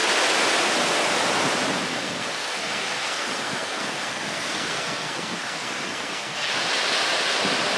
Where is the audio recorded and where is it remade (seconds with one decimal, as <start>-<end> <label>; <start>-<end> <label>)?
0.0-1.9 recorded; 1.9-6.5 remade; 6.5-7.8 recorded

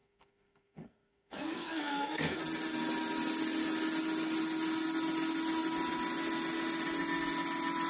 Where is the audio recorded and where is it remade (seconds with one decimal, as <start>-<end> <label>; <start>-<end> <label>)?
0.0-2.4 remade; 2.4-7.9 recorded